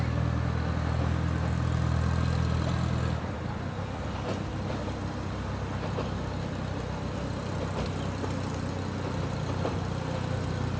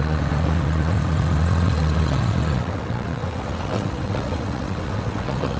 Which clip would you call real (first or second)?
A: first